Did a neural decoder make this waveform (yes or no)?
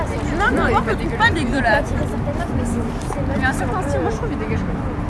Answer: no